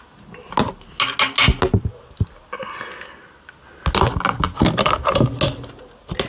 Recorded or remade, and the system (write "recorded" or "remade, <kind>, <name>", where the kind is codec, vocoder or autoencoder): recorded